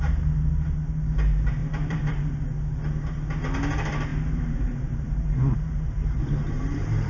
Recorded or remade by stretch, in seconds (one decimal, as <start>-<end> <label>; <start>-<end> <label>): 0.0-1.6 recorded; 1.6-2.3 remade; 2.3-4.1 recorded; 4.1-7.1 remade